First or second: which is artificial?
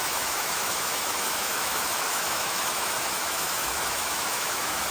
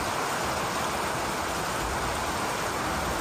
first